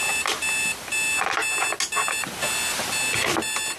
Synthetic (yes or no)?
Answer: no